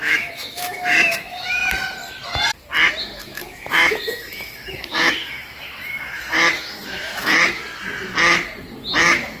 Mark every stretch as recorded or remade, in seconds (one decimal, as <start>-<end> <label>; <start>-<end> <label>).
0.0-1.6 remade; 1.6-3.0 recorded; 3.0-7.6 remade; 7.6-9.0 recorded; 9.0-9.4 remade